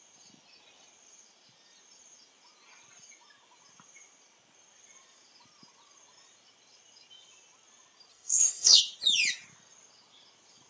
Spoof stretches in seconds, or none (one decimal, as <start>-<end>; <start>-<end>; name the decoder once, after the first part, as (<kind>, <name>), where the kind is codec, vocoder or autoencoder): 8.1-8.8 (codec, SNAC)